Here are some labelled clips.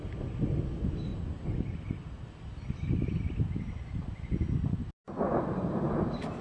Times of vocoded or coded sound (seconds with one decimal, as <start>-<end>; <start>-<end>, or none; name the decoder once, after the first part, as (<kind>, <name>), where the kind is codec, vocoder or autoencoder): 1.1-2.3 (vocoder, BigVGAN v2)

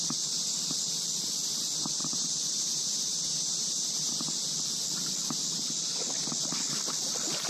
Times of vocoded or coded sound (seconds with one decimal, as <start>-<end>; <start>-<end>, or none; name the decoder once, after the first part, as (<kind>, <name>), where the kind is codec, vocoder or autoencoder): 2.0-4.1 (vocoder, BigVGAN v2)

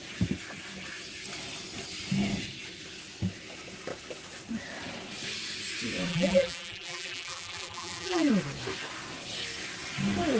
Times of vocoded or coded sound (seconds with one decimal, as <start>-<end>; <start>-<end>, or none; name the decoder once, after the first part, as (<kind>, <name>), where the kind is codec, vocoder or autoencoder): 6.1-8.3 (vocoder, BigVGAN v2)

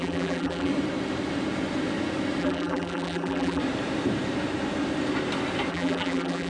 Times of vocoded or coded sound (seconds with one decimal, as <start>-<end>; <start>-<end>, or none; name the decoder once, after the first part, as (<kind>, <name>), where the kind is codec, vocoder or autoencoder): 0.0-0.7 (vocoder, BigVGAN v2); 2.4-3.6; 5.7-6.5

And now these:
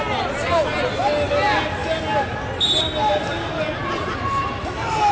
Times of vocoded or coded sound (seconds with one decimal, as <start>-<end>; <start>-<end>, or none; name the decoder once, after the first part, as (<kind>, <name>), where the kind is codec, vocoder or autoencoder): none

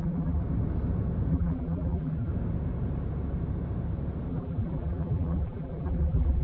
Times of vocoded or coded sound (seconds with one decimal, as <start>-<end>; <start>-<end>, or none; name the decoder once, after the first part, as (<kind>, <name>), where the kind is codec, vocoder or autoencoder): 0.0-0.4 (vocoder, BigVGAN v2); 1.3-2.3; 4.3-6.4